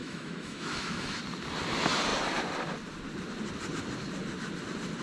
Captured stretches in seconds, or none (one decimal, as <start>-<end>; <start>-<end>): 1.2-5.0